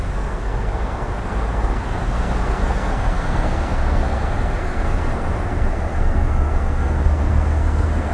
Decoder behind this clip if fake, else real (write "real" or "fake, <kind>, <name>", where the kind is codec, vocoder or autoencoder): fake, codec, SNAC